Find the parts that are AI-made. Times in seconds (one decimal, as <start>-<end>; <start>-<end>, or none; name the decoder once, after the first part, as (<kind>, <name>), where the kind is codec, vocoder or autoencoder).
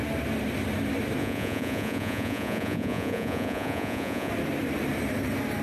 1.2-4.3 (vocoder, Vocos)